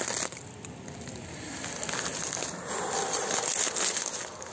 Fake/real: real